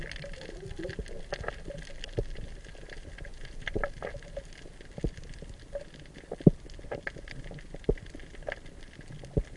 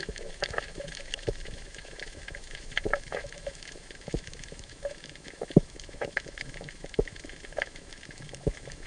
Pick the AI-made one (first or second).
second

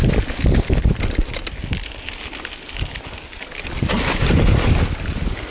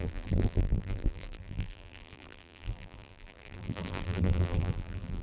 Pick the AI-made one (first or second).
second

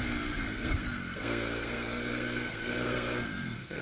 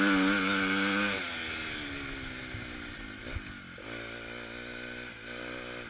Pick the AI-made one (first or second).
first